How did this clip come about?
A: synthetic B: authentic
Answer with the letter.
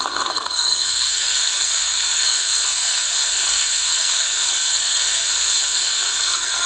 A